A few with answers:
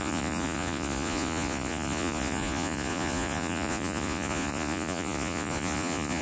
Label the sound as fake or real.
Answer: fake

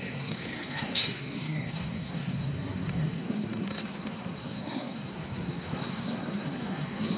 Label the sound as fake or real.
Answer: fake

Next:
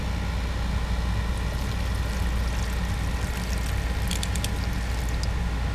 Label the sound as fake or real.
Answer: real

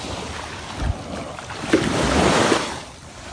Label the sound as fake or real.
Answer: real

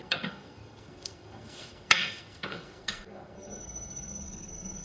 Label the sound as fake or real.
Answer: fake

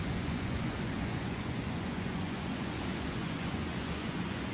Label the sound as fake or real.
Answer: fake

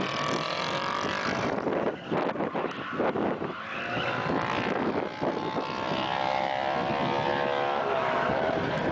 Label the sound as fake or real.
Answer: real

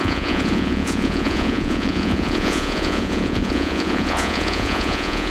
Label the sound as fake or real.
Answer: fake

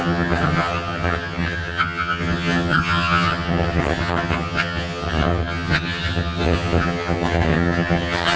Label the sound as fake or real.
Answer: fake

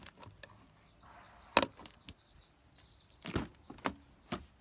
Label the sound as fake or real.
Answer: real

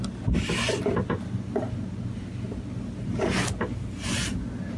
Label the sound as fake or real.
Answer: real